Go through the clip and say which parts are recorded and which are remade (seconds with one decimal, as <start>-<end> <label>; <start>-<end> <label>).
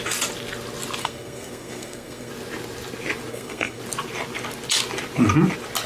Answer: 0.0-1.0 recorded; 1.0-2.3 remade; 2.3-3.3 recorded; 3.3-3.8 remade; 3.8-5.9 recorded